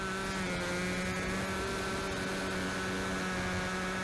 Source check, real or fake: real